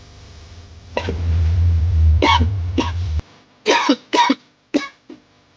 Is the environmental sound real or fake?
real